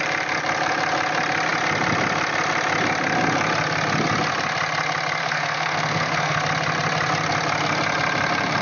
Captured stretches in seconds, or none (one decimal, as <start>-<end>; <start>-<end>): 0.0-5.2; 6.4-8.6